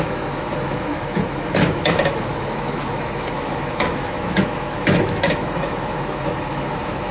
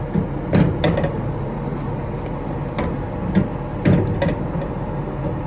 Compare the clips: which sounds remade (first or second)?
first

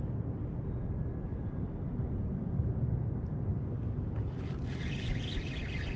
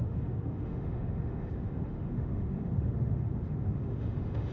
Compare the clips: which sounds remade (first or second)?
second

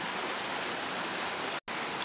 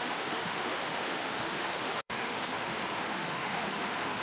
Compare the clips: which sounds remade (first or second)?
second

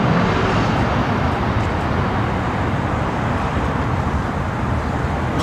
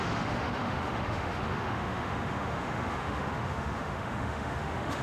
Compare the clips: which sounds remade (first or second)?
second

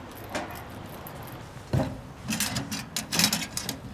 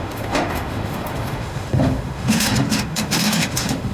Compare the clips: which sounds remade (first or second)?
second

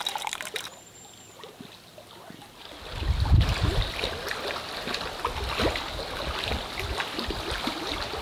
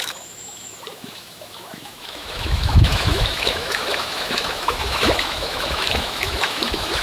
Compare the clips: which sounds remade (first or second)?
second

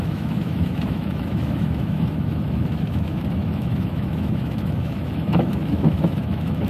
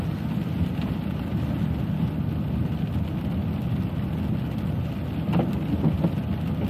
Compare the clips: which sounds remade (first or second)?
first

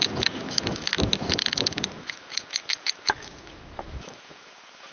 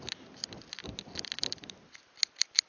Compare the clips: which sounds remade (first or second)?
first